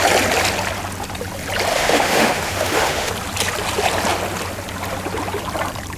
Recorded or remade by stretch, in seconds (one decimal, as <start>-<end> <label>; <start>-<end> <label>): 0.0-1.7 recorded; 1.7-3.1 remade; 3.1-6.0 recorded